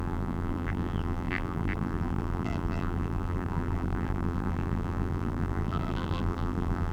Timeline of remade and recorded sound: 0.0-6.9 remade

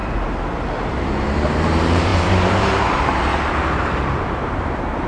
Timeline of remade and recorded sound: 0.0-0.9 recorded; 0.9-3.3 remade; 3.3-4.4 recorded; 4.4-5.1 remade

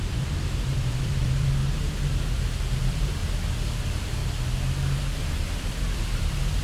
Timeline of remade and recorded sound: 0.0-1.6 remade; 1.6-2.8 recorded; 2.8-3.2 remade; 3.2-3.8 recorded; 3.8-4.2 remade; 4.2-5.0 recorded; 5.0-6.6 remade

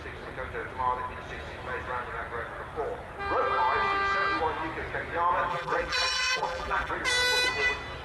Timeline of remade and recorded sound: 0.0-5.5 recorded; 5.5-6.9 remade; 6.9-8.0 recorded

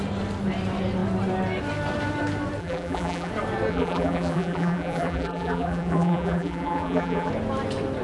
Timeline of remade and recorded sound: 0.0-2.6 recorded; 2.6-3.3 remade; 3.3-3.7 recorded; 3.7-7.3 remade; 7.3-8.0 recorded

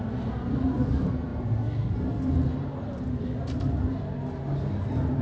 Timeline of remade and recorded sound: 0.0-5.2 recorded